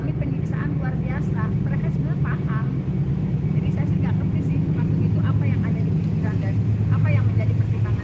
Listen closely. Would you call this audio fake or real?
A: real